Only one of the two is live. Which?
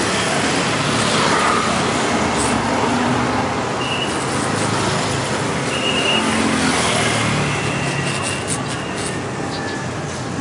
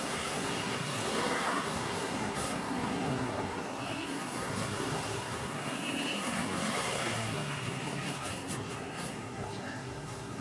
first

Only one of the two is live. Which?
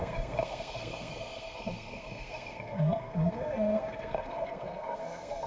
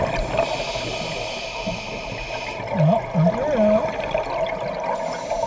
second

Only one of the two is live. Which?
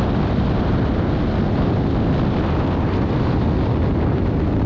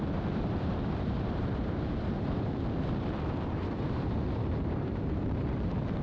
first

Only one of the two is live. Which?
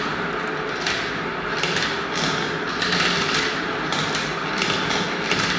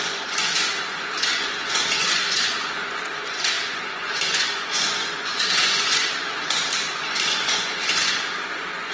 first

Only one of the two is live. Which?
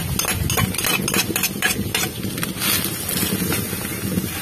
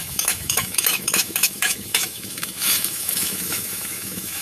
first